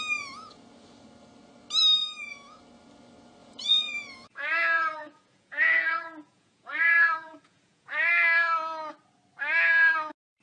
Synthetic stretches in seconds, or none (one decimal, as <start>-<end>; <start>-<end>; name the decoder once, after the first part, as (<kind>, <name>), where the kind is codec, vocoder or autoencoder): 2.0-2.6 (vocoder, Vocos); 3.4-8.1